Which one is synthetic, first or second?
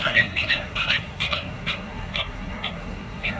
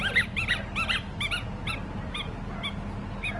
first